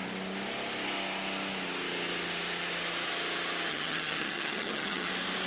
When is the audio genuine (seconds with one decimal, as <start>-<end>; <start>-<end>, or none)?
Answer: 0.0-3.7; 5.1-5.5